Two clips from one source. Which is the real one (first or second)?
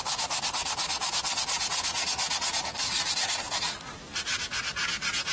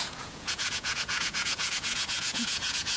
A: first